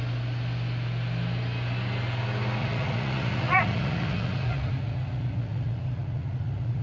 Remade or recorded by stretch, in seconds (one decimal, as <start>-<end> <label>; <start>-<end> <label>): 0.0-2.6 recorded; 2.6-6.8 remade